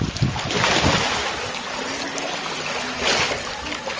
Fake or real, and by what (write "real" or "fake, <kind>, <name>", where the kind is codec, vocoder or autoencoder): real